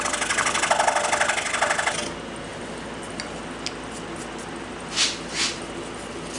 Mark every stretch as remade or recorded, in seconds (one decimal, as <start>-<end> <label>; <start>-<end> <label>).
0.0-6.4 recorded

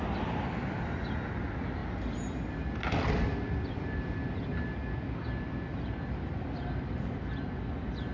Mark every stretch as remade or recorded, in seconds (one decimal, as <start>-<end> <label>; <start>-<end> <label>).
0.0-8.1 recorded

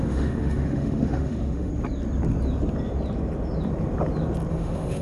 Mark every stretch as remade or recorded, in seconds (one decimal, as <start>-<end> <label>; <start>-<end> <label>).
0.0-1.7 remade; 1.7-4.5 recorded; 4.5-5.0 remade

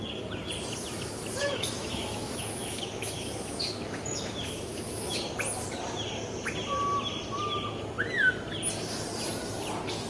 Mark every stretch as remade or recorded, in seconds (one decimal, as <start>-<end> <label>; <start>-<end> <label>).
0.0-1.4 recorded; 1.4-5.2 remade; 5.2-10.1 recorded

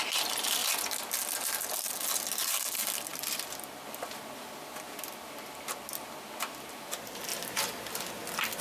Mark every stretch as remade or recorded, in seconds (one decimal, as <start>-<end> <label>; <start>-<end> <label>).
0.0-8.6 recorded

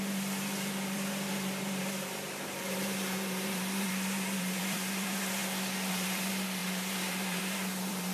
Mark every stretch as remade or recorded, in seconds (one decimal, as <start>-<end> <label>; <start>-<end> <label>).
0.0-5.4 remade; 5.4-5.9 recorded; 5.9-8.1 remade

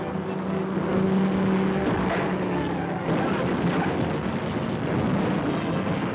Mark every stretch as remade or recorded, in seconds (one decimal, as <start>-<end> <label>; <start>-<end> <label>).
0.0-6.1 recorded